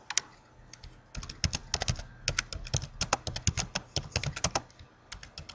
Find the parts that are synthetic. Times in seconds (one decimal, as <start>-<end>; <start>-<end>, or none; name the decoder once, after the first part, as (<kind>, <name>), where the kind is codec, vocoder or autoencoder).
none